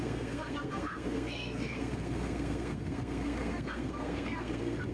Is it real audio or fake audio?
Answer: fake